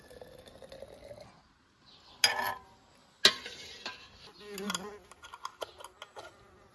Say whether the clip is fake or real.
real